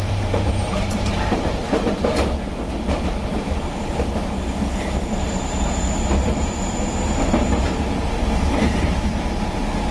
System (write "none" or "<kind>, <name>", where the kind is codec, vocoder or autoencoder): vocoder, BigVGAN v2